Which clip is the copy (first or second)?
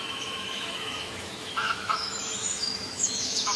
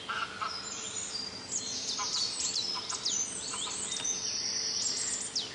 first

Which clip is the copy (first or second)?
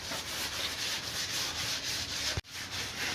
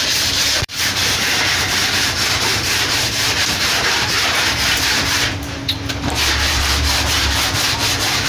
second